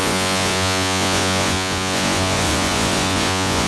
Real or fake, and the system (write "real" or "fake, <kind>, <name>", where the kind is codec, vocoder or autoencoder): fake, vocoder, Vocos